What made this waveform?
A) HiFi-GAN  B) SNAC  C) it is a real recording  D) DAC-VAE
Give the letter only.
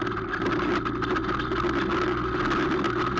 C